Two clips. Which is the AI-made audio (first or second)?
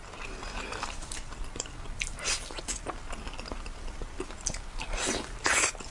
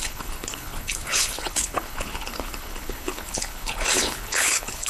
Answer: second